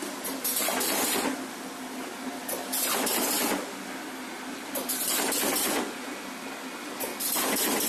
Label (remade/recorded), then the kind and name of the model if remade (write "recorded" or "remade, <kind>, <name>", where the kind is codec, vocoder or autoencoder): recorded